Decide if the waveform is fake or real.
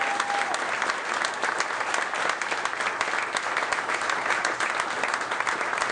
real